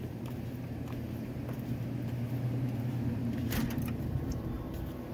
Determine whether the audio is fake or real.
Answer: fake